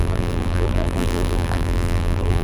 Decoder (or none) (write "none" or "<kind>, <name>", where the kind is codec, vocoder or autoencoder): vocoder, BigVGAN v2